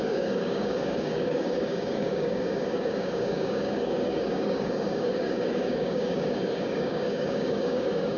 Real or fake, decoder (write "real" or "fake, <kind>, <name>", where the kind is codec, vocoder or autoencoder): fake, codec, DAC